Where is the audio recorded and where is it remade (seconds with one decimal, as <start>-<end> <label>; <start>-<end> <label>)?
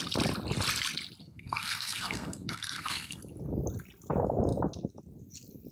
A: 0.0-1.2 recorded; 1.2-3.2 remade; 3.2-5.7 recorded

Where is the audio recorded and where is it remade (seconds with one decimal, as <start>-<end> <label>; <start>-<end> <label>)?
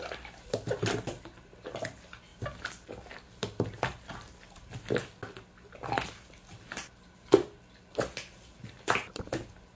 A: 0.0-9.7 recorded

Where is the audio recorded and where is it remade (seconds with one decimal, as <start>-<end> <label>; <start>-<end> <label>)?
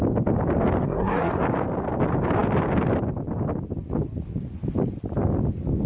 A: 0.0-0.8 recorded; 0.8-1.3 remade; 1.3-5.9 recorded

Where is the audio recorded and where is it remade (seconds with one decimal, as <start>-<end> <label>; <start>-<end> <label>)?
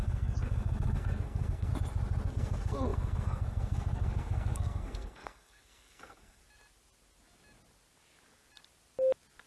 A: 0.0-1.7 remade; 1.7-2.3 recorded; 2.3-6.4 remade; 6.4-9.5 recorded